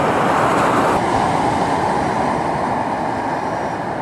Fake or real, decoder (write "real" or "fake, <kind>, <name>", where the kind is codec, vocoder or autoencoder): real